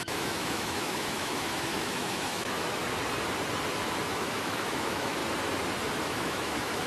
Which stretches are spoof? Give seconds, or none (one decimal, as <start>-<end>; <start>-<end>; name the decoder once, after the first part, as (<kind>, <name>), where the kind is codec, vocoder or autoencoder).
0.0-2.8 (autoencoder, DAC-VAE); 4.1-5.2; 6.0-6.9